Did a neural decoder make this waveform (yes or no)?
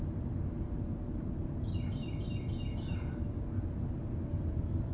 no